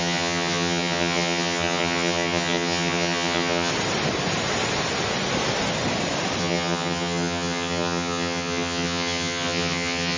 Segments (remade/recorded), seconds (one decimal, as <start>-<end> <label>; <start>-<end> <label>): 0.0-3.7 remade; 3.7-6.4 recorded; 6.4-10.2 remade